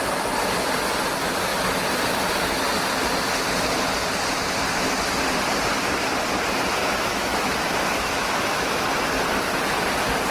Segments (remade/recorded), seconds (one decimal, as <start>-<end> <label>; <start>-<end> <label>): 0.0-6.8 recorded; 6.8-8.9 remade; 8.9-10.3 recorded